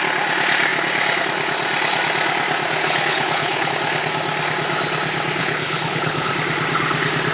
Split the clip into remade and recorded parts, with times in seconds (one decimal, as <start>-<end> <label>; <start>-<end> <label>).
0.0-2.8 recorded; 2.8-3.7 remade; 3.7-5.4 recorded; 5.4-6.3 remade; 6.3-7.3 recorded